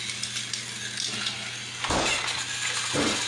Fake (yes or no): no